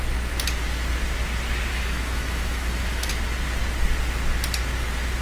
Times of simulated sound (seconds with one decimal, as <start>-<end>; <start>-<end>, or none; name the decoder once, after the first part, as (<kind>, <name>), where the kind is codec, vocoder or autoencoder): 1.7-3.1 (autoencoder, DAC-VAE)